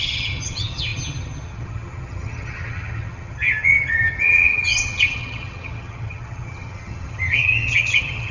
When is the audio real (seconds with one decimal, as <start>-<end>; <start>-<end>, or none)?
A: none